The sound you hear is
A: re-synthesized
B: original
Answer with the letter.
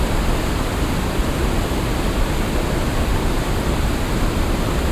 A